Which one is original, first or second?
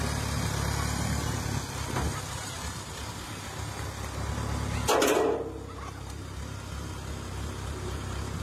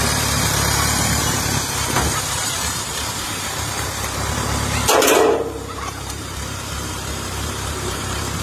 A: first